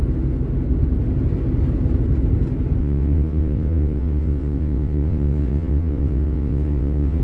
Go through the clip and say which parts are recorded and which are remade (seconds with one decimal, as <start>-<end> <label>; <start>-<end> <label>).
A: 0.0-2.8 recorded; 2.8-7.2 remade